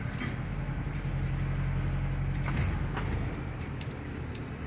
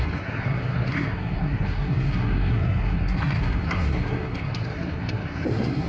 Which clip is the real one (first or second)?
first